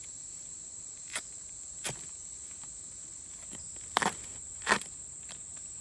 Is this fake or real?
real